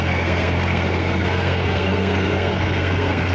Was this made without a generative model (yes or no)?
no